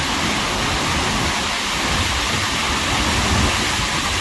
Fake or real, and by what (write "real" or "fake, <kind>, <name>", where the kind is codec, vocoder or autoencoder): real